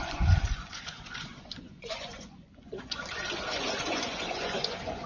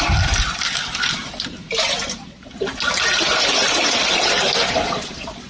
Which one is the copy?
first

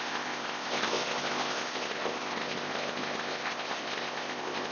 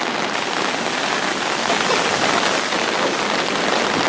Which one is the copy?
first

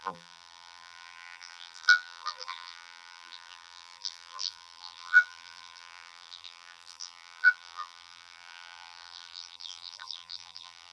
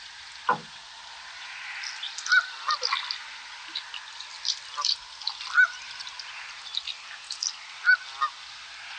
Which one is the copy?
first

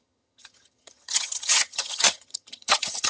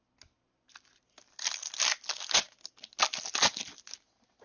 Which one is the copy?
first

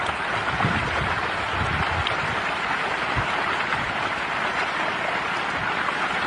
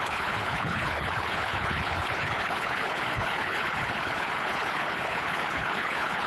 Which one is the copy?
second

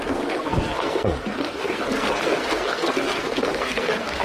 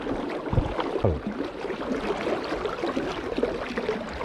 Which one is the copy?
first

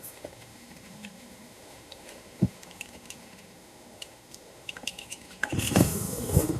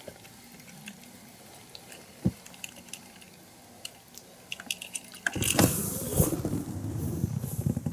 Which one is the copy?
first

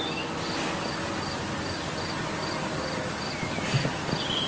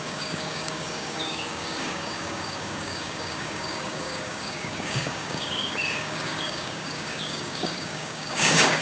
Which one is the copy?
second